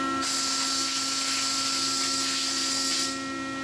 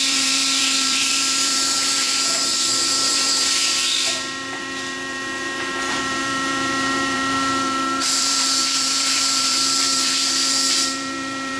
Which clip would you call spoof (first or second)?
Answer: second